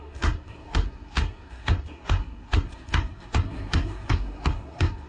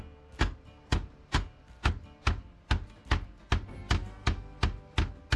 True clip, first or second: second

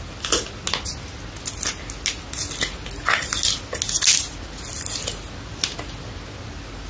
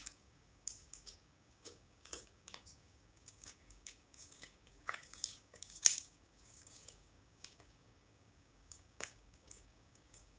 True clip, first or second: first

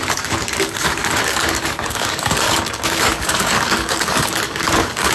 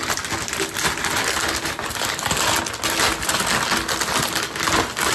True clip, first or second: second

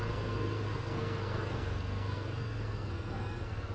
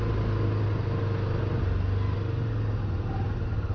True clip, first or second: second